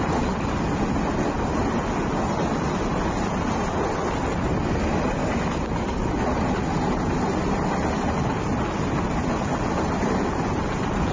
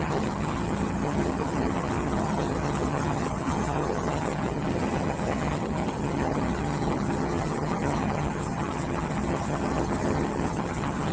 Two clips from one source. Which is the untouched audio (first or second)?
first